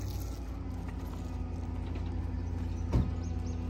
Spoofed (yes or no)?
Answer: no